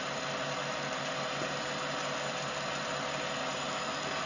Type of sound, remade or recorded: recorded